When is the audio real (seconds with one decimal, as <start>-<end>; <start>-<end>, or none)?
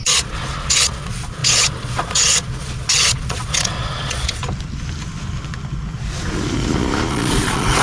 4.4-7.1